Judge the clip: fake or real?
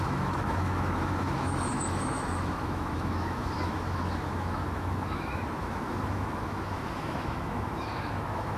fake